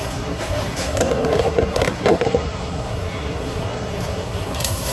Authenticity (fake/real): fake